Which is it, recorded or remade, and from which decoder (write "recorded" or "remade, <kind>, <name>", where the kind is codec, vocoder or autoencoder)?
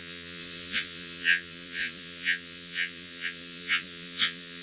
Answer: remade, vocoder, Vocos